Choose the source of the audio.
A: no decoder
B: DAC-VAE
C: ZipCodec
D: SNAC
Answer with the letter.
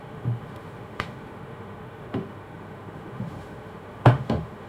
B